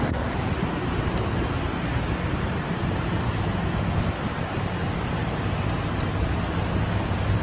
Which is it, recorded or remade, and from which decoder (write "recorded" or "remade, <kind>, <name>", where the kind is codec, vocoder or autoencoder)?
recorded